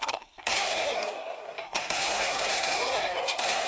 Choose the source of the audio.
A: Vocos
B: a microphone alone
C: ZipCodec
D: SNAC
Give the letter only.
D